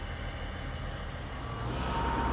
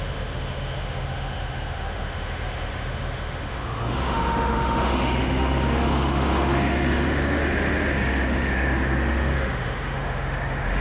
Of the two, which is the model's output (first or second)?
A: second